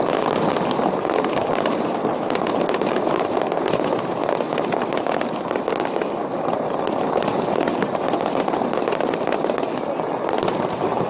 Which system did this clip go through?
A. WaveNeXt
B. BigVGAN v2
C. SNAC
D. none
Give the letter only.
D